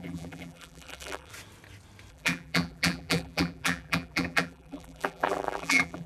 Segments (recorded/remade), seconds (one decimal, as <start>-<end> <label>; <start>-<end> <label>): 0.0-1.3 remade; 1.3-2.1 recorded; 2.1-6.1 remade